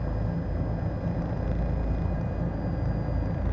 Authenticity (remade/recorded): recorded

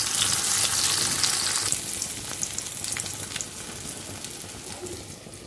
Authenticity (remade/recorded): recorded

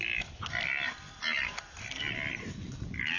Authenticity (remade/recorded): recorded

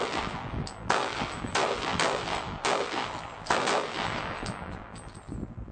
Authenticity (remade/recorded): remade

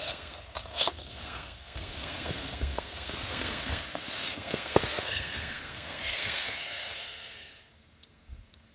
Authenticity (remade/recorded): remade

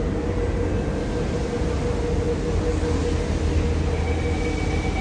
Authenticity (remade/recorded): recorded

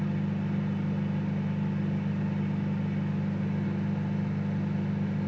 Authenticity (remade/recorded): recorded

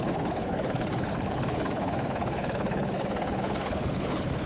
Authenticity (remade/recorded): remade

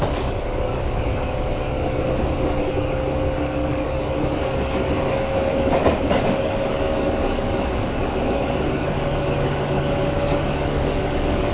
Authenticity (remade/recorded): remade